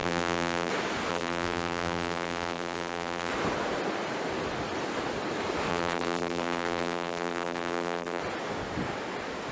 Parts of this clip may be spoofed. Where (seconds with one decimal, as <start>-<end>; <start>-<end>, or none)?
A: 0.0-0.7; 1.1-3.3; 5.7-8.2